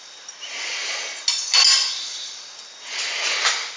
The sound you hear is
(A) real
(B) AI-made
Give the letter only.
A